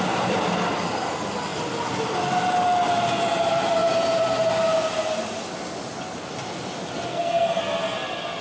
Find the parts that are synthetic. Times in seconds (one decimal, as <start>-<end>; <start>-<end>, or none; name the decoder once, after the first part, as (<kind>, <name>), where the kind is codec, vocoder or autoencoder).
7.1-7.6 (codec, SNAC)